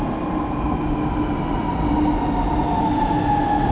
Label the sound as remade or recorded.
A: recorded